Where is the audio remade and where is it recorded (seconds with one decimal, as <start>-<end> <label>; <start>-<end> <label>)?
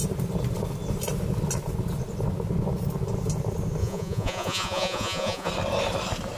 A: 0.0-3.8 recorded; 3.8-5.5 remade; 5.5-6.4 recorded